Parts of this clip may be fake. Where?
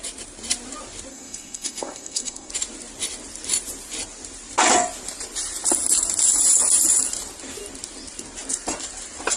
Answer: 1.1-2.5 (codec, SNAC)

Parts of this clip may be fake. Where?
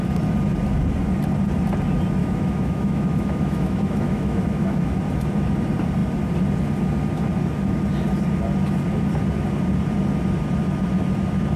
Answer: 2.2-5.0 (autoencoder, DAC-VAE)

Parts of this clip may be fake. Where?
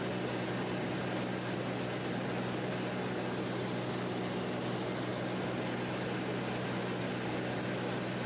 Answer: none